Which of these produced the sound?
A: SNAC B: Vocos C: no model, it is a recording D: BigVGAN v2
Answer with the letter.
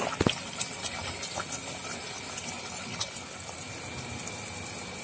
C